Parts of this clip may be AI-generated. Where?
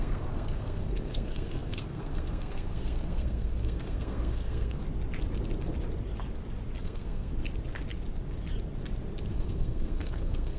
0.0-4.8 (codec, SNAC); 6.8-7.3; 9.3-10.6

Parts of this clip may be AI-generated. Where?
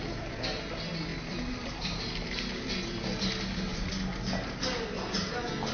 none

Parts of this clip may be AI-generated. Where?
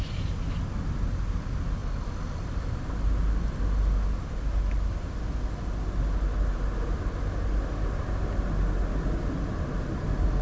none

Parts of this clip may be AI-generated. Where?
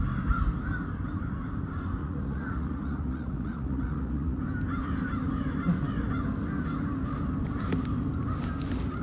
2.0-4.4 (vocoder, Vocos)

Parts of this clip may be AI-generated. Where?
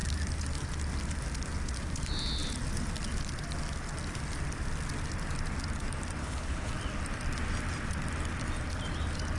6.2-6.7 (codec, HILCodec)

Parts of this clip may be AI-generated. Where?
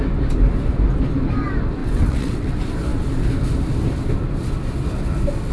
1.8-2.5 (vocoder, WaveNeXt)